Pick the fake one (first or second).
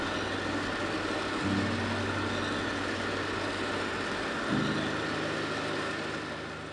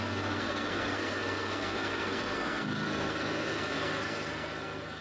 second